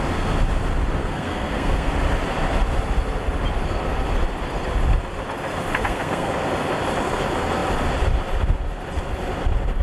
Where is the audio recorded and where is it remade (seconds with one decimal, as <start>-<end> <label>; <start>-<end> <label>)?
0.0-1.0 recorded; 1.0-1.9 remade; 1.9-5.7 recorded; 5.7-6.3 remade; 6.3-9.8 recorded